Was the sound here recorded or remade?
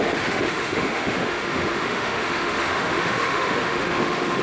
remade